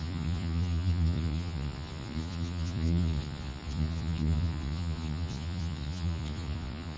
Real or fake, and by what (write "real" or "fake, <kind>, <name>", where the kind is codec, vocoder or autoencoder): fake, vocoder, Vocos